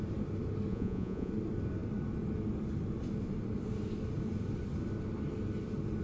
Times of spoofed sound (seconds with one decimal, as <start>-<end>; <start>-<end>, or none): 0.7-1.3